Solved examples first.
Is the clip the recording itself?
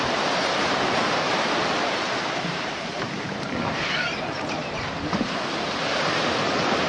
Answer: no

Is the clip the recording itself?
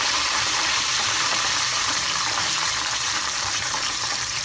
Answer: no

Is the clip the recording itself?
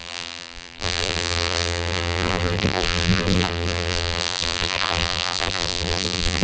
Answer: no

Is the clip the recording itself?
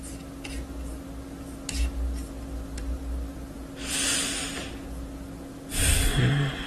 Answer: yes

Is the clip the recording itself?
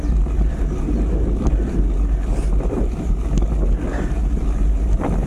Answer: yes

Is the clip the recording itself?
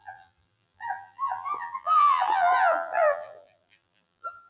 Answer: no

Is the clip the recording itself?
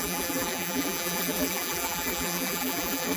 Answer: no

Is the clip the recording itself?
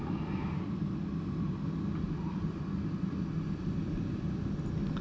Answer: yes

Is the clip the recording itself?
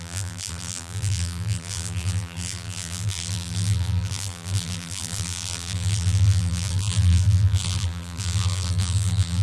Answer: no